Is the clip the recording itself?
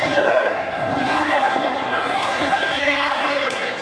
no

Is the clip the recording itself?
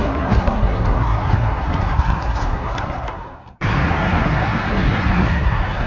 no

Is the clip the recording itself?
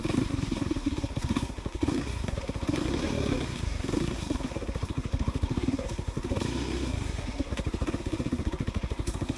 no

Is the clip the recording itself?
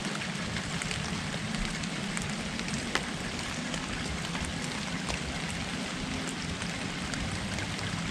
yes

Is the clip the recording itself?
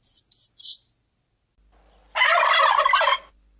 yes